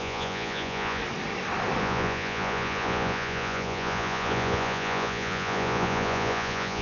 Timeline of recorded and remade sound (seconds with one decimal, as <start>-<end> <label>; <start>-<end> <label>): 0.0-1.0 remade; 1.0-1.8 recorded; 1.8-6.8 remade